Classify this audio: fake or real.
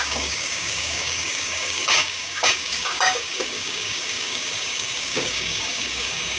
fake